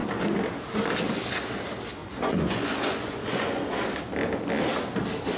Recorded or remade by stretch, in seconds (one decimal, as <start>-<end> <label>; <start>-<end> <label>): 0.0-2.0 recorded; 2.0-3.7 remade; 3.7-5.4 recorded